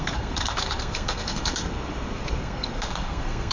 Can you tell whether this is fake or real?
fake